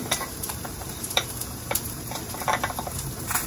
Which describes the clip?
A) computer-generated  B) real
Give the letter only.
A